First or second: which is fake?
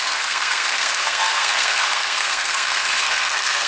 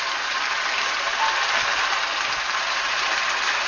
first